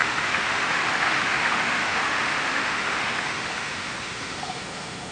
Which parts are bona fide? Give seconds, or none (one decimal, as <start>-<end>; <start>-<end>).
none